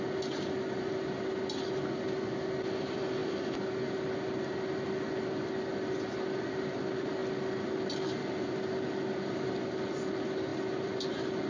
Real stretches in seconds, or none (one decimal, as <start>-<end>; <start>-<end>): 0.0-11.5